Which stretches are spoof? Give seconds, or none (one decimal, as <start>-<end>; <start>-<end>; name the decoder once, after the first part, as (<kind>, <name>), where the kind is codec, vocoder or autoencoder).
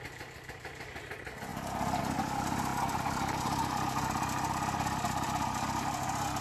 none